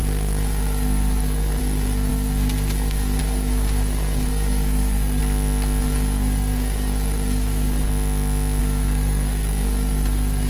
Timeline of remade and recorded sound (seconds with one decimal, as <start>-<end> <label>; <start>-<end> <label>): 0.0-5.2 remade; 5.2-5.8 recorded; 5.8-7.9 remade; 7.9-8.6 recorded; 8.6-10.5 remade